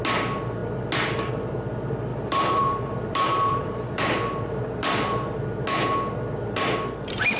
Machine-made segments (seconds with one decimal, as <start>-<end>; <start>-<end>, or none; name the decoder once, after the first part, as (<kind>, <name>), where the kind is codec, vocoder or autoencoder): 2.1-5.4 (vocoder, BigVGAN v2)